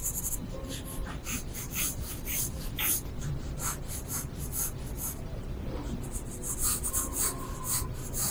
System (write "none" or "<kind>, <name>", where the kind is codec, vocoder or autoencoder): none